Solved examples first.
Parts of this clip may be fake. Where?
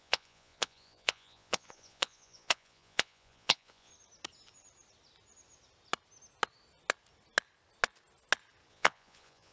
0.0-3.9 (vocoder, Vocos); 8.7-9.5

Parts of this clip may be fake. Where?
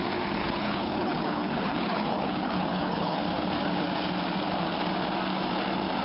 0.4-3.2 (codec, HILCodec)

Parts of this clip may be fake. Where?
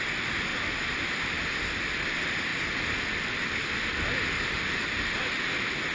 none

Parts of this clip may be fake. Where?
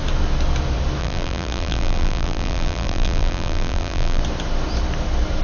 1.0-4.2 (vocoder, BigVGAN v2)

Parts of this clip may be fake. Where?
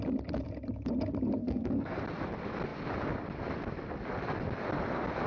1.4-2.0 (codec, SNAC)